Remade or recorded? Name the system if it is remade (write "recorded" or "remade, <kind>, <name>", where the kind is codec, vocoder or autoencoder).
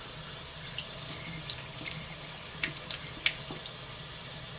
recorded